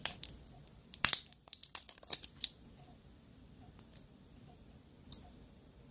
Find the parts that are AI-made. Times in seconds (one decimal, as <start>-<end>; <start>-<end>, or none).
0.0-5.9